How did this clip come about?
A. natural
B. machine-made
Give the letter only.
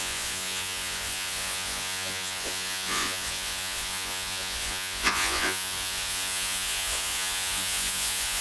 B